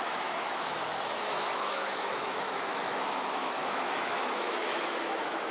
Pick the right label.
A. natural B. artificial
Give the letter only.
B